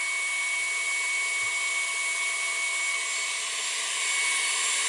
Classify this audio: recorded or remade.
recorded